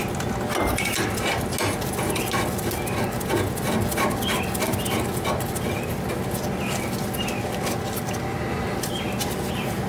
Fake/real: real